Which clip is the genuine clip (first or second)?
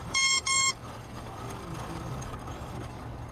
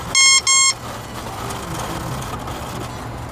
second